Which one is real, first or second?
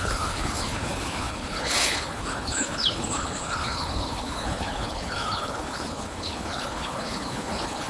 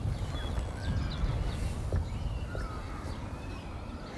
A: second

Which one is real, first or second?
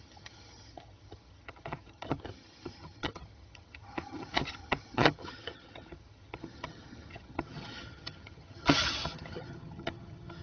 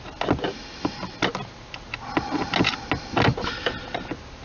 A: second